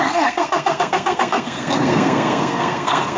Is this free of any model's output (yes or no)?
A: no